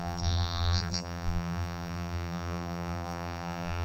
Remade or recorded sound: remade